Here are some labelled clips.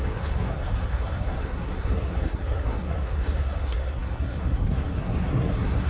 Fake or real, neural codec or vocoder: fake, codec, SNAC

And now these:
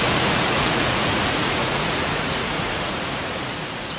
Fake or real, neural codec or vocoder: fake, vocoder, Vocos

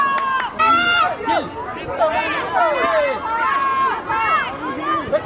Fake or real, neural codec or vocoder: real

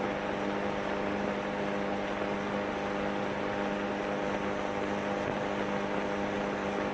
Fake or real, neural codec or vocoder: real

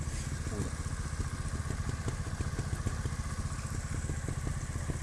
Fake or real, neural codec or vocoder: real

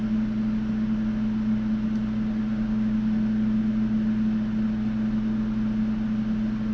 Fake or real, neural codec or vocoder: real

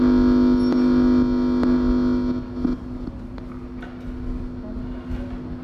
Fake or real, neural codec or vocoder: real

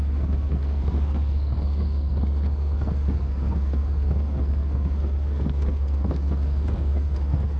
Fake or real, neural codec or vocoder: fake, codec, SNAC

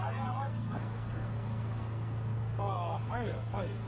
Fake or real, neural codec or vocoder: fake, codec, SNAC